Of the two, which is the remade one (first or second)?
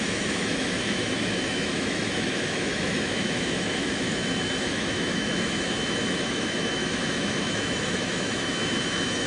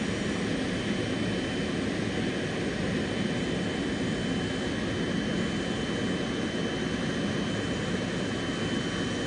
first